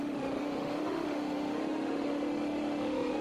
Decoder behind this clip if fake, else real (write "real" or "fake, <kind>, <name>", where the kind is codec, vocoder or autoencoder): fake, autoencoder, DAC-VAE